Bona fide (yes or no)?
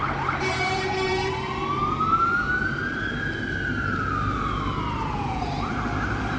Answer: no